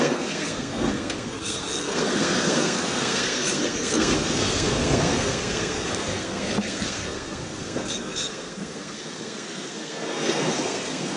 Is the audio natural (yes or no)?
no